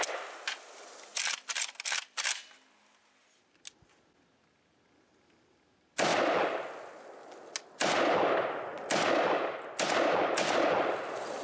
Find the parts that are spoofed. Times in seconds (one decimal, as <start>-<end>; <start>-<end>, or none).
none